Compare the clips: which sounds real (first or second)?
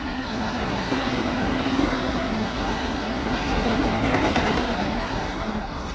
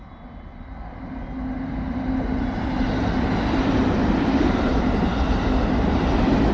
second